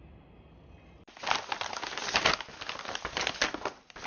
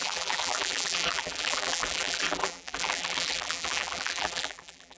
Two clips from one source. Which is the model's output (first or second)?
second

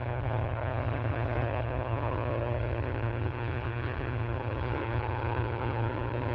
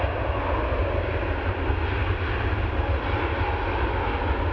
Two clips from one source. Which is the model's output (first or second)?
first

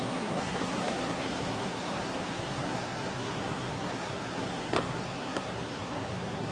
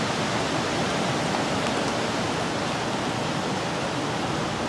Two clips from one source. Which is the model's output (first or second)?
first